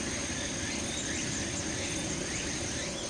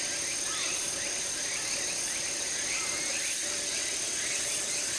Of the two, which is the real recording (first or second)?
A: first